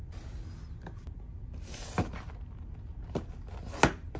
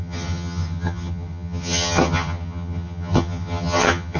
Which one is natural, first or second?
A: first